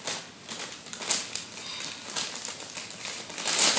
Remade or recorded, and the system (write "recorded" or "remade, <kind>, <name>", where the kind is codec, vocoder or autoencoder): recorded